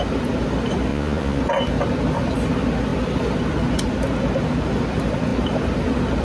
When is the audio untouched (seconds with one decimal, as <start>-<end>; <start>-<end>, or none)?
0.0-0.9; 1.4-6.2